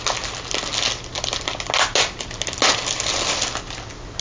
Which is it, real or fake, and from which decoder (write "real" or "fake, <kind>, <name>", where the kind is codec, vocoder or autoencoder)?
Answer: real